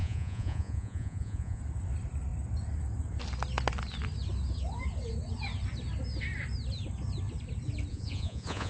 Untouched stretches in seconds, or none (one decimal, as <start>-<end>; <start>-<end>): 1.6-7.9